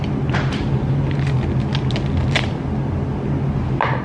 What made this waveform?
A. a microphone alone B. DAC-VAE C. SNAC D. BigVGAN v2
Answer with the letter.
A